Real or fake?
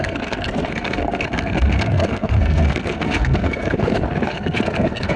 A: fake